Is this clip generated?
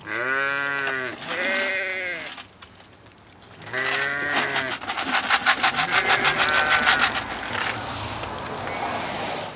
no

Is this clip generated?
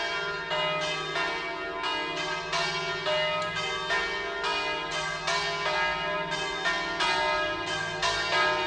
no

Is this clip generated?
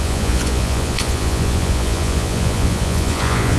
yes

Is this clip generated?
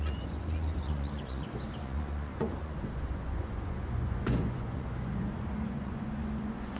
yes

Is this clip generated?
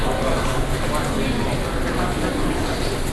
no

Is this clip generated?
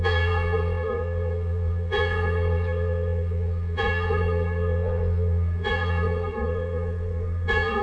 yes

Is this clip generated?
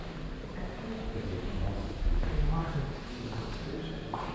no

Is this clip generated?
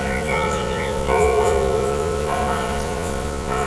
yes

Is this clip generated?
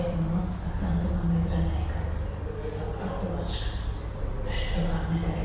no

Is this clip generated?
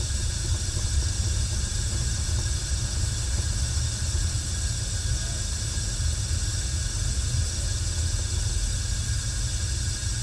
no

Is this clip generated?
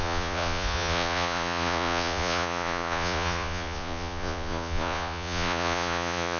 yes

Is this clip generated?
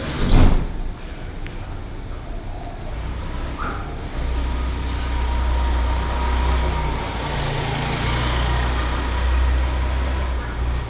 no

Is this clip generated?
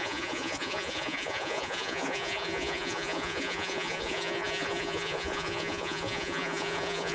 yes